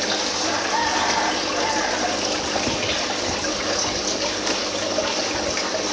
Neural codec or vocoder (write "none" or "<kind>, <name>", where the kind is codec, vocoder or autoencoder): none